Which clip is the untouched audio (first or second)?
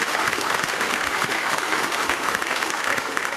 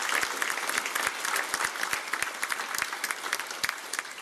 second